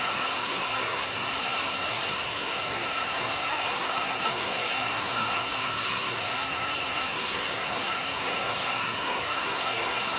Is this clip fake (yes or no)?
yes